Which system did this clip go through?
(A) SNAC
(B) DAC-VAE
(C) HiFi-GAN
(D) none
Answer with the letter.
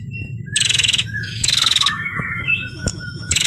B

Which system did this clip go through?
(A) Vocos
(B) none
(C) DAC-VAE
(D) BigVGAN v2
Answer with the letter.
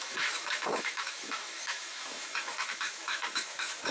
C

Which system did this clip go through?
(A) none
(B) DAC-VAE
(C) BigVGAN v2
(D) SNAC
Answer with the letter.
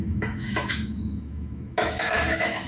B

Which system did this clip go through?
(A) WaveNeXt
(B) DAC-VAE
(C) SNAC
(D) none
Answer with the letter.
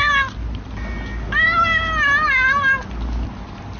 D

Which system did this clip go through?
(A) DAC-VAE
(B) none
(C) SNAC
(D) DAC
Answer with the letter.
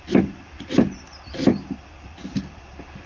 B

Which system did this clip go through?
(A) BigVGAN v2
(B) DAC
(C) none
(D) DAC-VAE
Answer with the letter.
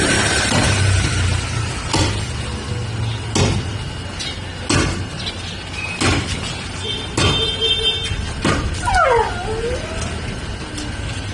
C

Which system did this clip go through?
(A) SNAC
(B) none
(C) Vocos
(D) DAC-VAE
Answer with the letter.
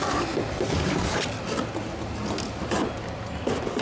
B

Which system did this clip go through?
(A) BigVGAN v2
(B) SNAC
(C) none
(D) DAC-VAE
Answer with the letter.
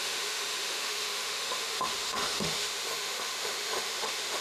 D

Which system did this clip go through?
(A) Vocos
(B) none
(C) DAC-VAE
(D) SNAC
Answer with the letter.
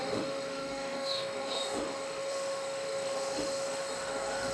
C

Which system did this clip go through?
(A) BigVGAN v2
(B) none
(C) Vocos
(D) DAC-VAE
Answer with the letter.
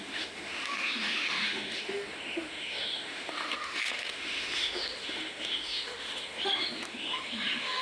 D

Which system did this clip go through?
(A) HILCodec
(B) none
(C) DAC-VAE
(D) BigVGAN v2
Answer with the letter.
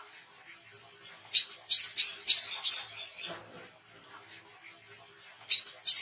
B